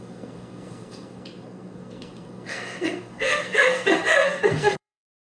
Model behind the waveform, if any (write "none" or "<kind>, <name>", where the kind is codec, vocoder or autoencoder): codec, SNAC